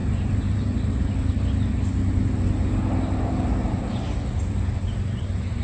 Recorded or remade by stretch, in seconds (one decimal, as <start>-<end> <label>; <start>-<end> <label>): 0.0-1.1 remade; 1.1-5.6 recorded